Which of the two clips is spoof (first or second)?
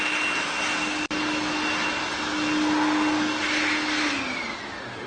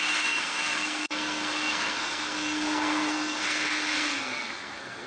second